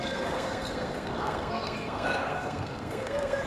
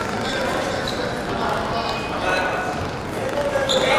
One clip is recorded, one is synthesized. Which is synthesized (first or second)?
first